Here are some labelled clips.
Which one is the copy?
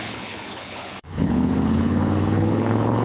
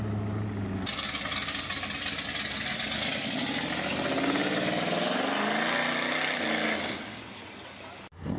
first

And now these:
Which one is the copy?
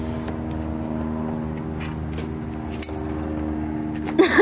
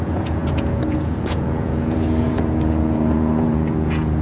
second